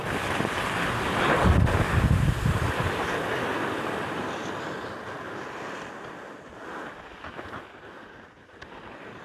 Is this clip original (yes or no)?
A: yes